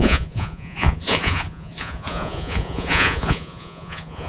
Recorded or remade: remade